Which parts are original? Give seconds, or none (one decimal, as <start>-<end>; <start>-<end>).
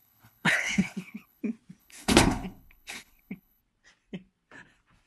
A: 1.4-1.8; 3.6-5.1